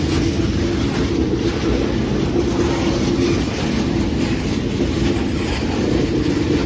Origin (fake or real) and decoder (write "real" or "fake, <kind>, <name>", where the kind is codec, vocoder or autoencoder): real